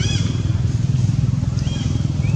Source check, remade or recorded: remade